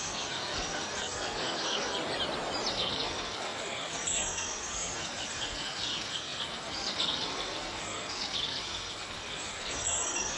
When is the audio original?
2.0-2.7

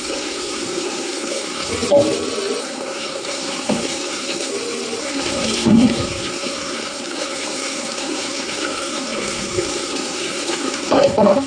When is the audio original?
1.7-2.6; 4.5-5.0

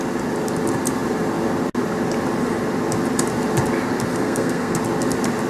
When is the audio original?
0.0-4.1; 4.8-5.5